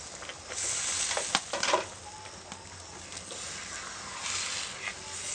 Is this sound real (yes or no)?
yes